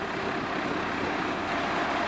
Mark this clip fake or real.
real